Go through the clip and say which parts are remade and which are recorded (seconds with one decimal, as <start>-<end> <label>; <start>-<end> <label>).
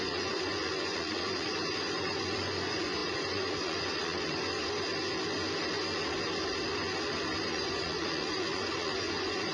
0.0-4.6 remade; 4.6-7.4 recorded; 7.4-9.5 remade